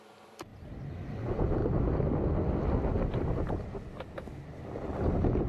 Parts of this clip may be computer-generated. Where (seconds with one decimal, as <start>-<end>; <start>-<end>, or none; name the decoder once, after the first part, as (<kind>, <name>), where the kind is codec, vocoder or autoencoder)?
none